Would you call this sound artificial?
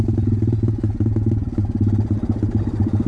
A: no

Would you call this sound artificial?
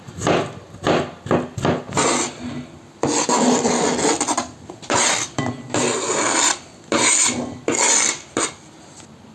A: no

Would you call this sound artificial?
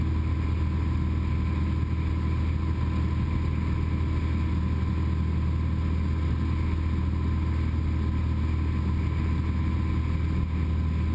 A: no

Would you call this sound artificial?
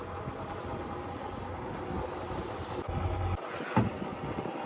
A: no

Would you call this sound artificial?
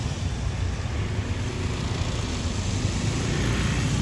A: no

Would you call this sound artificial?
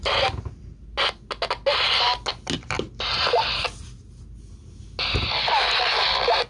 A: no